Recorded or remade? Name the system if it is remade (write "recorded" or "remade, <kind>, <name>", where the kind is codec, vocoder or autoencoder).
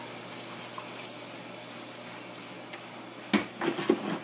recorded